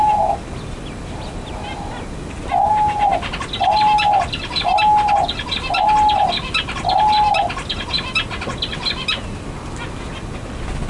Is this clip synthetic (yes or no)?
no